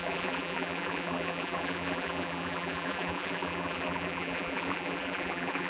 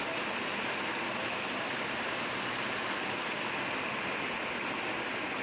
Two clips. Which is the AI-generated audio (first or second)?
first